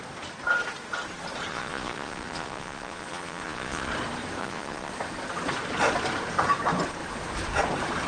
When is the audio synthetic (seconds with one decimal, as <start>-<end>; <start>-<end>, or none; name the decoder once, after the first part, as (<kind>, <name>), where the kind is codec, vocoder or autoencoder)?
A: 1.5-3.9 (vocoder, Vocos); 4.4-4.9